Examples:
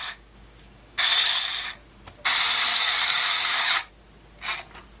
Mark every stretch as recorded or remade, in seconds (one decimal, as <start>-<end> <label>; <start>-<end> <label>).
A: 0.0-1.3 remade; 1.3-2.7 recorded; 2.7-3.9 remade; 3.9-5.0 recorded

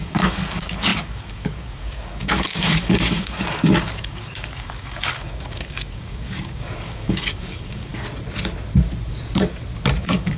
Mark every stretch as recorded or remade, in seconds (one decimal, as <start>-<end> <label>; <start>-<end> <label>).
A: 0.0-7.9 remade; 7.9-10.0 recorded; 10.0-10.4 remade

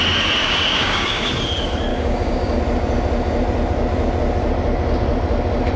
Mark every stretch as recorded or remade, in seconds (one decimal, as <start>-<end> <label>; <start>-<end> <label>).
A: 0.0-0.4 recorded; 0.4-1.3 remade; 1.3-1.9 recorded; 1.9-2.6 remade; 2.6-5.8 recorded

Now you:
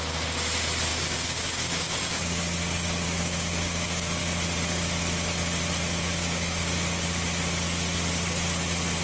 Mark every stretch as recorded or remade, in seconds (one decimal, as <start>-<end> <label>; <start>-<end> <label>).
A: 0.0-0.9 recorded; 0.9-4.2 remade; 4.2-6.1 recorded; 6.1-6.7 remade; 6.7-9.0 recorded

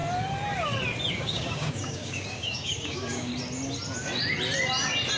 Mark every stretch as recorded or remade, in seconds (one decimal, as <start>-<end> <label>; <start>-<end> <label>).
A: 0.0-1.1 recorded; 1.1-3.3 remade; 3.3-5.2 recorded